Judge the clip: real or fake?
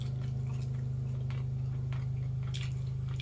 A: real